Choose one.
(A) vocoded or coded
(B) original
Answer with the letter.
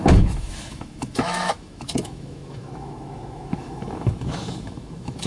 A